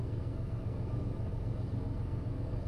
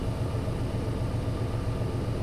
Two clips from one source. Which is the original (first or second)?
second